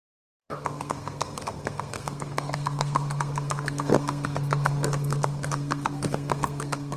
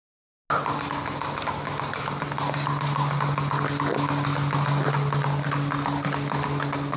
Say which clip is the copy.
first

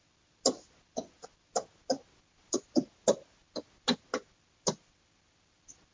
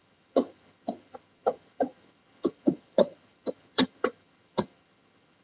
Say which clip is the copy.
second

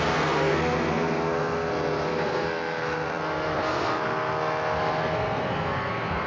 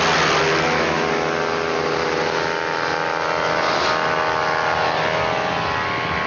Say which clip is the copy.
first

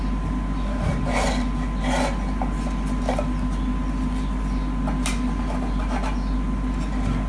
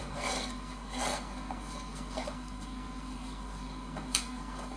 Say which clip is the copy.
second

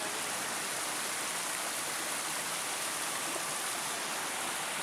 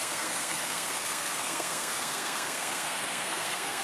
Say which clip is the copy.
second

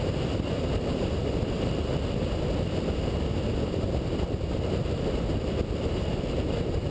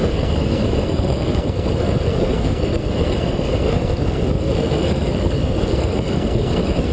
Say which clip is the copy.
second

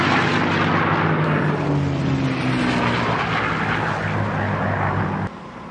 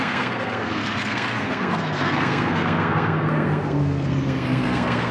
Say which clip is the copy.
second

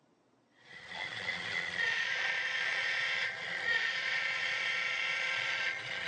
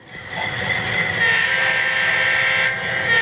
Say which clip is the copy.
first